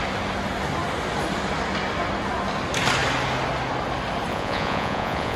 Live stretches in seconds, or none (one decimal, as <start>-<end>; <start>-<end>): 0.0-4.3